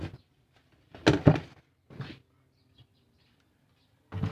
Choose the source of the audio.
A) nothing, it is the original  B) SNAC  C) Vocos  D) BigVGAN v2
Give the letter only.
A